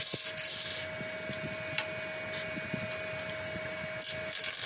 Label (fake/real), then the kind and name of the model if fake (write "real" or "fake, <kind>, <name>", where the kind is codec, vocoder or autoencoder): real